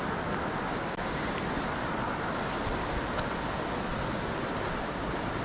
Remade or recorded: recorded